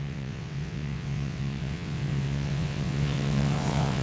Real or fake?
fake